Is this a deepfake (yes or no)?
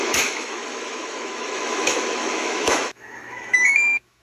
yes